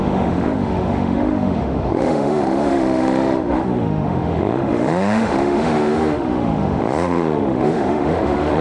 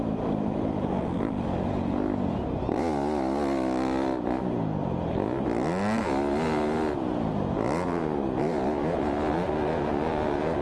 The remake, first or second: first